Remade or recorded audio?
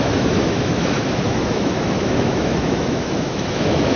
remade